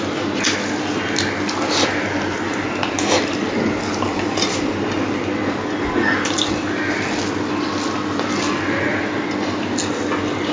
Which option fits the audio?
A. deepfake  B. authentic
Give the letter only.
B